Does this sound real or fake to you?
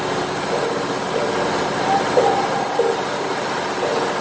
real